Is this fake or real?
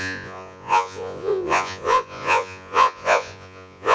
fake